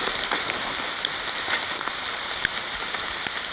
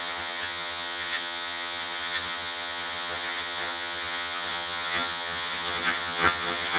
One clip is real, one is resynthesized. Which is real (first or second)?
first